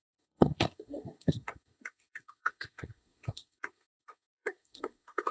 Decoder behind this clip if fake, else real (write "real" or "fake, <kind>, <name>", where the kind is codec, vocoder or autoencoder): fake, codec, SNAC